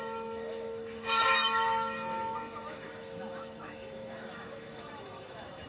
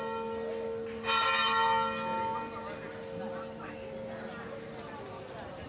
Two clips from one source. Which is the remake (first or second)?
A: first